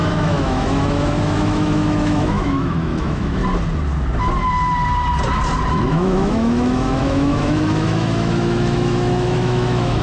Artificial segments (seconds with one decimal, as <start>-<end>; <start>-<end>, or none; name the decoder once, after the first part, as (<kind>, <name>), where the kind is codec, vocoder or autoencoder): 0.0-3.4 (autoencoder, DAC-VAE); 5.7-10.0